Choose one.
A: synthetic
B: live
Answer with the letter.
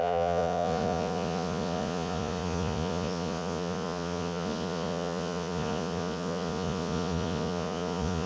A